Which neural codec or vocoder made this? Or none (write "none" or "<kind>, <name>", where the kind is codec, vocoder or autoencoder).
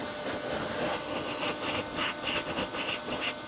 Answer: none